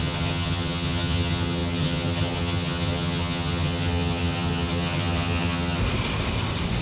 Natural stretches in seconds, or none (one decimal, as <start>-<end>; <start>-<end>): 5.8-6.8